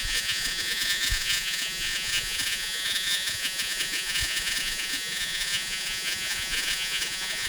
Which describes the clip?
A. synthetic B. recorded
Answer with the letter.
A